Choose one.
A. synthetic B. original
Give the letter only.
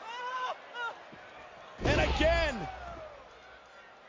B